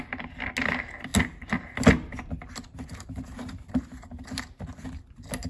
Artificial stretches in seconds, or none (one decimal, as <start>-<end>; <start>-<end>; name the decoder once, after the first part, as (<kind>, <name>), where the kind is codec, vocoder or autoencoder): none